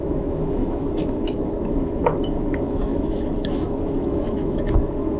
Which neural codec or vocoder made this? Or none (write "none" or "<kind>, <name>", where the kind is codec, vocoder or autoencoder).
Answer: autoencoder, DAC-VAE